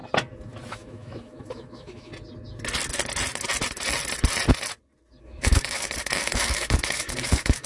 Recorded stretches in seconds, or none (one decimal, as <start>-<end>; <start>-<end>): 0.0-0.7; 2.1-5.2